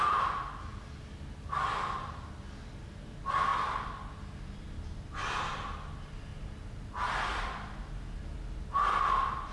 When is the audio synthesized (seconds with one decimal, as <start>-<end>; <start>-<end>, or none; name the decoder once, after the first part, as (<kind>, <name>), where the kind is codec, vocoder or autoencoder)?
none